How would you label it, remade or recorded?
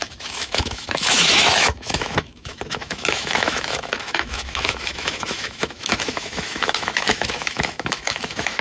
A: remade